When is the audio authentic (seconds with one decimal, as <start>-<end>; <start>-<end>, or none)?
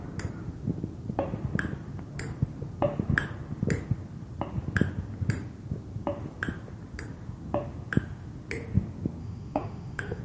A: 0.0-9.2